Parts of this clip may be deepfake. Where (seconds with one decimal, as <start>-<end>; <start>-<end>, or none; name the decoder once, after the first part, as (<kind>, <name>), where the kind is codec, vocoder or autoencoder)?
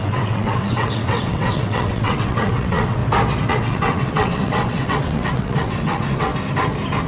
0.0-3.0 (vocoder, WaveNeXt); 3.5-6.3